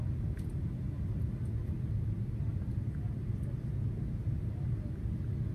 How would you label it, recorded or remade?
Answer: recorded